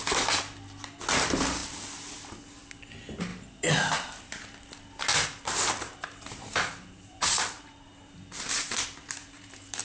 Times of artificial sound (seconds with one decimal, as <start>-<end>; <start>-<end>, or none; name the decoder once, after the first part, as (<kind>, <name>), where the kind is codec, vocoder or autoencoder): 5.1-9.8 (vocoder, BigVGAN v2)